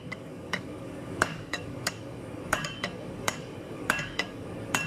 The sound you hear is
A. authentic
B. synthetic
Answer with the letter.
B